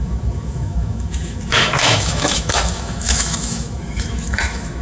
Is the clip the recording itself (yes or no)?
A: no